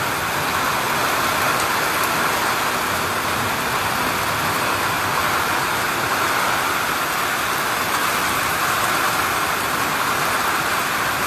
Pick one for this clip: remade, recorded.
recorded